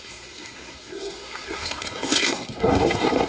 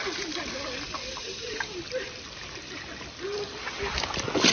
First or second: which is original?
second